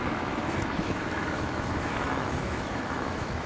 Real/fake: fake